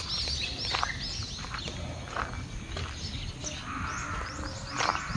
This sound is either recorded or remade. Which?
recorded